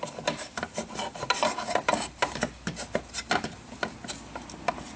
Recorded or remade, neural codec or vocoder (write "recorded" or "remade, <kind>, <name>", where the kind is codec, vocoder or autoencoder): recorded